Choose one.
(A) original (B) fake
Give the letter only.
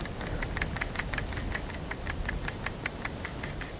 A